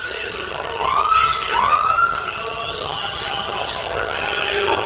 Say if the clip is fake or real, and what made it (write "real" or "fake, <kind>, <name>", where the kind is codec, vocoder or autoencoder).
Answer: fake, vocoder, HiFi-GAN